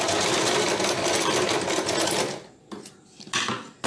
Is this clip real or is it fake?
real